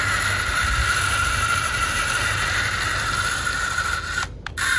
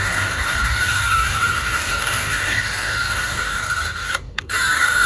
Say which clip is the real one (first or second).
first